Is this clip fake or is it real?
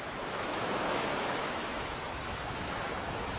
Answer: fake